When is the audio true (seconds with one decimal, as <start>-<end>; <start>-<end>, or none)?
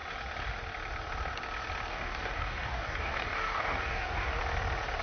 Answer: 0.0-1.9; 4.4-5.0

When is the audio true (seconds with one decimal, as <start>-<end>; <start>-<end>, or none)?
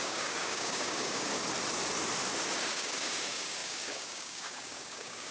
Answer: 1.3-2.7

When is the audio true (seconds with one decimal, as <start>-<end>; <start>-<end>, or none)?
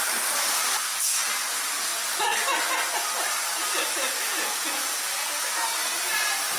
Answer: 0.0-6.6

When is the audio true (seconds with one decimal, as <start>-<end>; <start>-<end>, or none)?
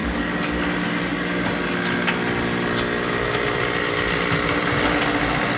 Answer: 0.5-5.6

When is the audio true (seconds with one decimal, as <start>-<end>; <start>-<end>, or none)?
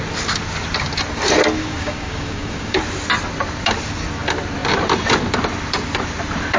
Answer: 0.0-1.6; 2.8-6.6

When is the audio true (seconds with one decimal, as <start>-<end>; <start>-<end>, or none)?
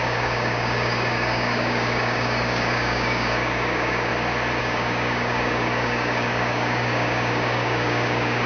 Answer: 4.1-4.6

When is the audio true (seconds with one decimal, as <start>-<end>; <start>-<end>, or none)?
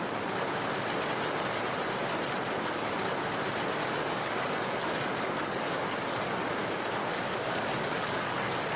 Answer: 0.0-3.8; 6.5-7.0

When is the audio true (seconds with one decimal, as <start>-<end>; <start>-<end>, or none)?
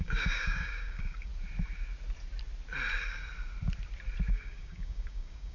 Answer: 1.3-4.3